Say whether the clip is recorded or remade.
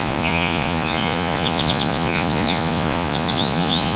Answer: remade